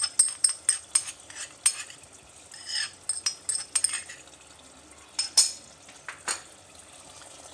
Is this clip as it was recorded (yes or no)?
yes